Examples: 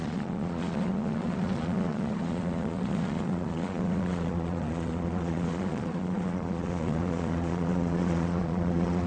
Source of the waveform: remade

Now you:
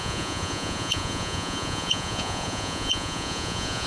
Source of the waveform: remade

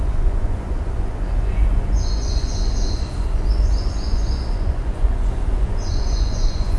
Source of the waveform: remade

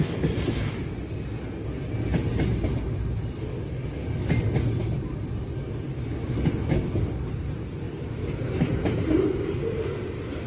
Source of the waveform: recorded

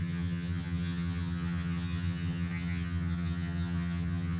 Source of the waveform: remade